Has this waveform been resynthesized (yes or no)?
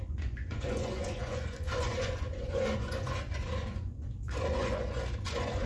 yes